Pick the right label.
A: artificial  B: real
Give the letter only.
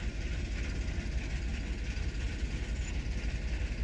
B